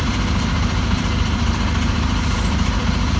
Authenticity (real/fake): real